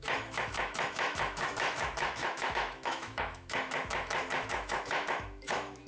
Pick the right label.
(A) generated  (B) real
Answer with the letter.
A